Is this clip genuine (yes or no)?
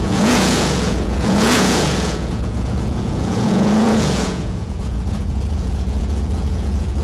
no